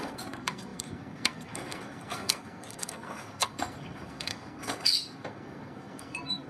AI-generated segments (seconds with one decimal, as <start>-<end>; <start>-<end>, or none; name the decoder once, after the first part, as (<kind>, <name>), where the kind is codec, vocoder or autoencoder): 0.0-6.5 (codec, SNAC)